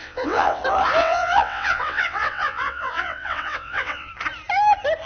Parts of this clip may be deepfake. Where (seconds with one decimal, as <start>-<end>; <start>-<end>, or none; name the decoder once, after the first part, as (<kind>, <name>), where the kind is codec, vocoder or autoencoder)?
0.0-0.6 (vocoder, WaveNeXt); 1.0-4.1